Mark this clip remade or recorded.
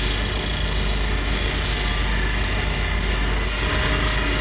recorded